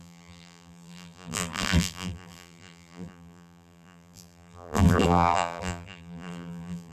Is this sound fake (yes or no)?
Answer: yes